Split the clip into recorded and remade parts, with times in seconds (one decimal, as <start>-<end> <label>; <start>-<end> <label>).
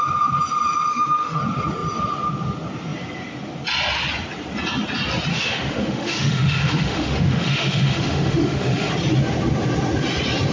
0.0-0.9 recorded; 0.9-1.4 remade; 1.4-5.3 recorded; 5.3-8.9 remade; 8.9-10.5 recorded